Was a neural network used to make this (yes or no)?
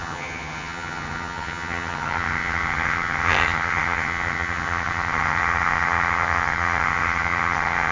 yes